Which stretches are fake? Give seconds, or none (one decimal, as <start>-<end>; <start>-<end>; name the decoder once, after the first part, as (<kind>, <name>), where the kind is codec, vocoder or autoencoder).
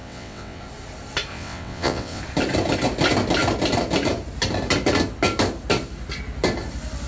0.0-0.6 (vocoder, WaveNeXt); 1.3-2.2